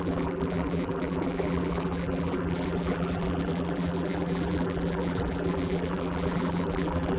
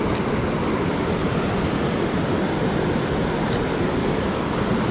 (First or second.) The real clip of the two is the second